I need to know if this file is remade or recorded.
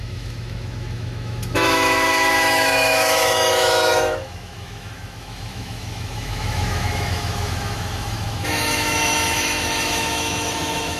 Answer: remade